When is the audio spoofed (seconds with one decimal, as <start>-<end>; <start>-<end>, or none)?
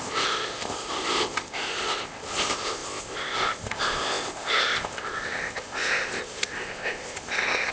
0.0-7.7